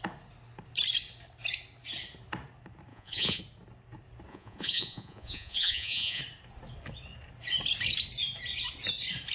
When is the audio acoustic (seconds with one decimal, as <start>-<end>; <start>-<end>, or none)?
0.0-2.9; 3.4-4.3; 6.2-9.3